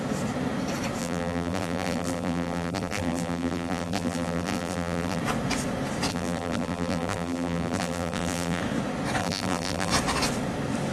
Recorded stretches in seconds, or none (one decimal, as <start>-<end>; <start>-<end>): 0.0-1.0; 5.2-6.1; 8.6-9.2; 9.9-10.9